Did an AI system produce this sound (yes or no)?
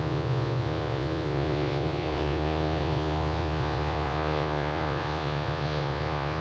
yes